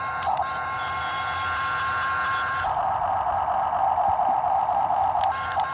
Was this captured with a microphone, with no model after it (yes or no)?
yes